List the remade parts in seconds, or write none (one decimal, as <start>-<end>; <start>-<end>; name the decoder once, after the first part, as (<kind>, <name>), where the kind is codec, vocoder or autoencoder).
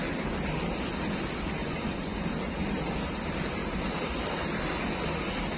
1.6-2.2 (vocoder, Vocos)